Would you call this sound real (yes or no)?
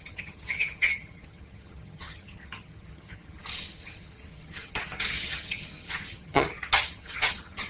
no